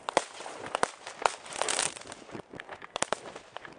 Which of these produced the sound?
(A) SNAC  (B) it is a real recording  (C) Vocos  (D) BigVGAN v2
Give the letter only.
B